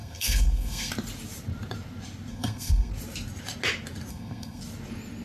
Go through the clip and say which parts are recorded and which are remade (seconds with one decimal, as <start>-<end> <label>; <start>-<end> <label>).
0.0-0.9 remade; 0.9-2.3 recorded; 2.3-2.9 remade; 2.9-4.1 recorded; 4.1-4.6 remade; 4.6-5.2 recorded

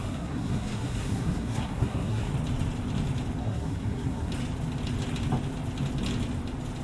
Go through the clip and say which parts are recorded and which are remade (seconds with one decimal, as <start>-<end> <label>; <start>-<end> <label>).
0.0-2.3 remade; 2.3-3.4 recorded; 3.4-4.3 remade; 4.3-6.8 recorded

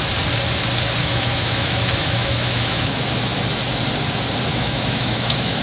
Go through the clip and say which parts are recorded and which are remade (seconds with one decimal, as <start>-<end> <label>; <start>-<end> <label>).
0.0-1.0 recorded; 1.0-3.4 remade; 3.4-4.5 recorded; 4.5-5.6 remade

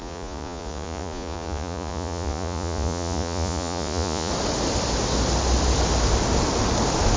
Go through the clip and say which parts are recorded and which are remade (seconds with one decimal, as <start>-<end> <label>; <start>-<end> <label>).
0.0-4.3 remade; 4.3-7.2 recorded

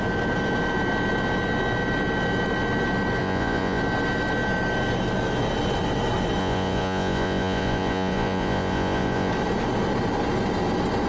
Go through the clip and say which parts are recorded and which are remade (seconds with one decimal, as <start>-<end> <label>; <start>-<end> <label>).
0.0-3.2 recorded; 3.2-3.8 remade; 3.8-6.4 recorded; 6.4-9.3 remade; 9.3-11.1 recorded

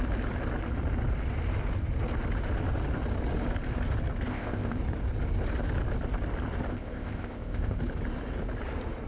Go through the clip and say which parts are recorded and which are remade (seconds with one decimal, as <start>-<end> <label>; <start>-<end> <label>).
0.0-4.3 recorded; 4.3-4.8 remade; 4.8-6.7 recorded; 6.7-7.8 remade; 7.8-9.1 recorded

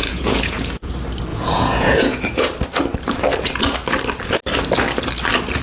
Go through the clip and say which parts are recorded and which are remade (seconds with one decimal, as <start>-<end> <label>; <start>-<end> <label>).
0.0-0.9 remade; 0.9-1.3 recorded; 1.3-2.4 remade; 2.4-5.6 recorded

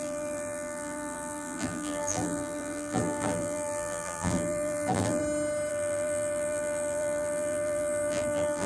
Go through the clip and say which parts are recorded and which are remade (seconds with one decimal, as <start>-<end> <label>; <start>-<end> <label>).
0.0-5.2 remade; 5.2-5.7 recorded; 5.7-8.7 remade